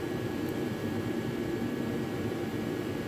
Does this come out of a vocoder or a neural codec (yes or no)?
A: yes